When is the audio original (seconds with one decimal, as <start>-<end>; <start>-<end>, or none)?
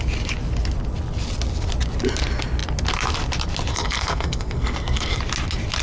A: 0.0-3.7; 5.2-5.8